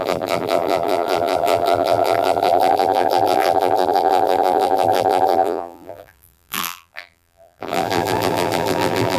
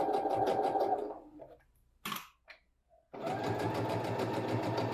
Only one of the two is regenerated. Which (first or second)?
first